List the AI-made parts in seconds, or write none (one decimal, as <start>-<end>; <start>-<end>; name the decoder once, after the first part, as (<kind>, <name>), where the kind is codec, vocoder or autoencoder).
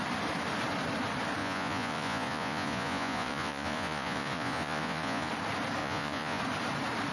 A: 1.4-5.3 (vocoder, Vocos); 5.8-6.4